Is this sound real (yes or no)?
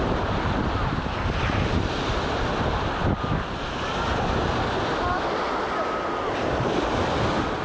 yes